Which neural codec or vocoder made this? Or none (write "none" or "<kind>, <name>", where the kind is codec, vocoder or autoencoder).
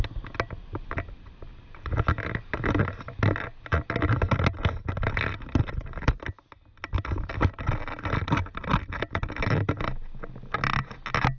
none